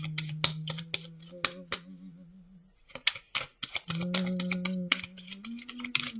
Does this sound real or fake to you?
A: real